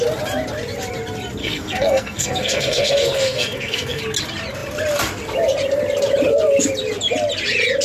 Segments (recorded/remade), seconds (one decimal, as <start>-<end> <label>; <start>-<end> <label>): 0.0-1.4 recorded; 1.4-4.0 remade; 4.0-7.8 recorded